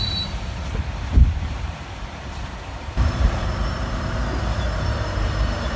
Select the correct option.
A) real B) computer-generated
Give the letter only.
B